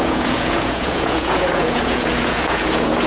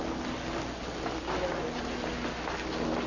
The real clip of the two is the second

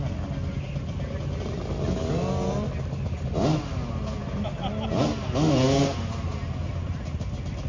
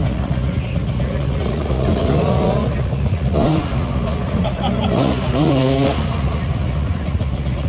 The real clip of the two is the first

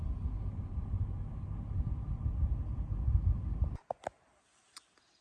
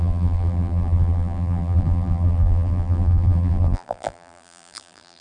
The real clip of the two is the first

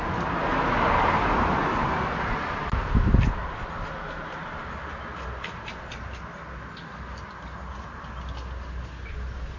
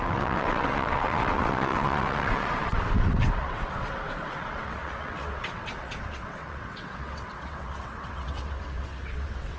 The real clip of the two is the first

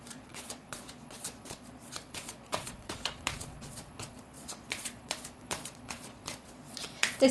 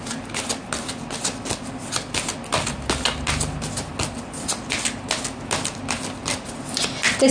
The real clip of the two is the second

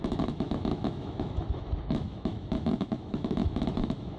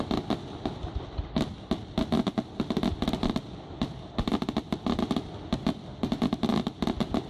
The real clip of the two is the second